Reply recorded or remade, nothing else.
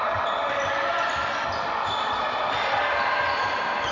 remade